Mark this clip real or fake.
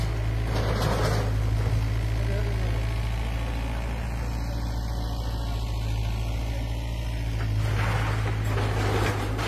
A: real